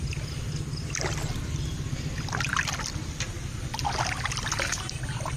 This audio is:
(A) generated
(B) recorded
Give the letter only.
B